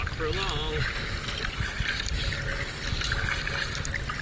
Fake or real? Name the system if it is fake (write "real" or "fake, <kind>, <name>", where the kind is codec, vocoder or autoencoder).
real